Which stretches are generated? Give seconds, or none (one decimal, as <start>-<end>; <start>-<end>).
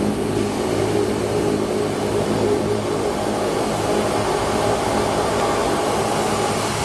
none